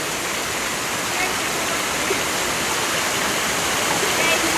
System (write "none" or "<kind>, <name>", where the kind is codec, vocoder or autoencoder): none